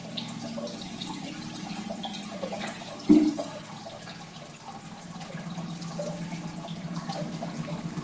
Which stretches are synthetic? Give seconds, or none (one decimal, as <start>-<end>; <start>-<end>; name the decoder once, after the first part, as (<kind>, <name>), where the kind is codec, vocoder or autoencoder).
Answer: none